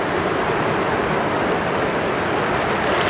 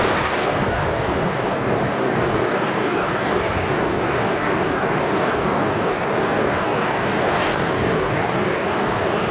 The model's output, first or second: second